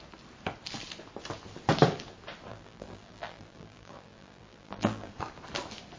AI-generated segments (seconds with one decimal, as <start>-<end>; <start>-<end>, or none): 2.5-5.1